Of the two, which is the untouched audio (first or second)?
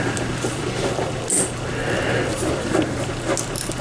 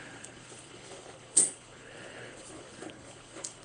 first